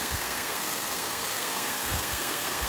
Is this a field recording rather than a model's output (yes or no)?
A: no